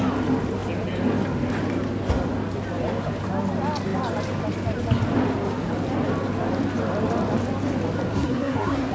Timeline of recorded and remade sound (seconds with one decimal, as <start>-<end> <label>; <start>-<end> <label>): 0.0-8.1 recorded; 8.1-8.9 remade